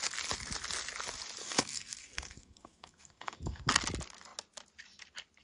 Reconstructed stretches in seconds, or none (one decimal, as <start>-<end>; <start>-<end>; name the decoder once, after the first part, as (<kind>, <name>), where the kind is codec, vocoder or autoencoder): 1.4-3.7 (codec, SNAC)